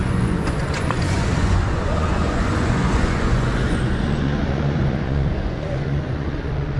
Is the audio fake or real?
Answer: fake